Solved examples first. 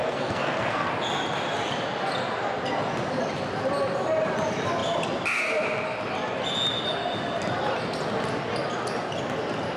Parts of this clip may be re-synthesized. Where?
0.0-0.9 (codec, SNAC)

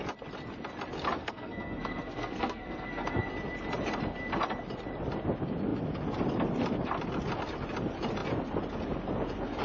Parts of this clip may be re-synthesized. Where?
1.2-3.3 (codec, SNAC)

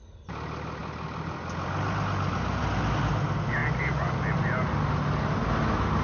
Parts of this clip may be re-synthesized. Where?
none

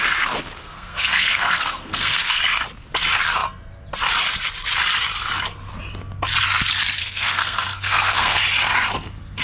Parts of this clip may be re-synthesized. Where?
0.6-2.4 (codec, SNAC); 7.0-8.4

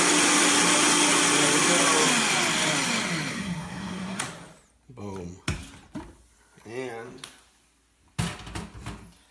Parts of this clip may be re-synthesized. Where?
3.3-4.2 (codec, SNAC)

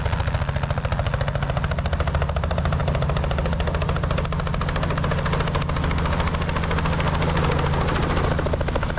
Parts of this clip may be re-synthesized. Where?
none

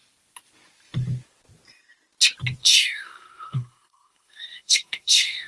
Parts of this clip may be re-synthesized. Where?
2.6-5.5 (codec, SNAC)